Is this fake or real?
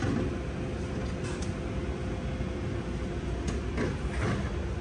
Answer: real